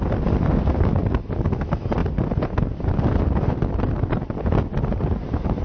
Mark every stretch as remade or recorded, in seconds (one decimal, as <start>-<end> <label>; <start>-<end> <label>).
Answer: 0.0-5.6 recorded